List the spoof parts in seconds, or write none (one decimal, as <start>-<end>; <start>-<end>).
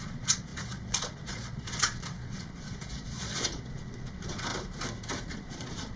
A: 0.0-4.5; 5.3-6.0